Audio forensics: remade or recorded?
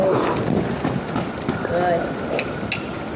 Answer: recorded